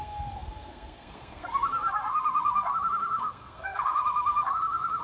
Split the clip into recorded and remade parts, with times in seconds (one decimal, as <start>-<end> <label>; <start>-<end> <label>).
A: 0.0-5.0 remade